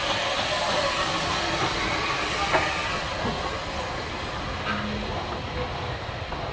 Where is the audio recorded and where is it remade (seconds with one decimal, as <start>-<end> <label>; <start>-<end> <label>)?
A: 0.0-6.5 recorded